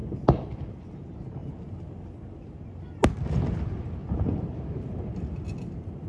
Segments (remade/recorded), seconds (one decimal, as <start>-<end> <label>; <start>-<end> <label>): 0.0-6.1 recorded

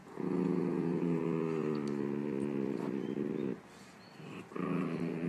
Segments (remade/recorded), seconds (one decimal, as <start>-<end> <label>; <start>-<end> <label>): 0.0-1.2 remade; 1.2-5.3 recorded

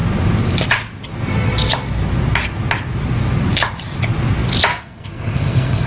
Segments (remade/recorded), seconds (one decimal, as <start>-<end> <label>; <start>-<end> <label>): 0.0-4.7 recorded; 4.7-5.9 remade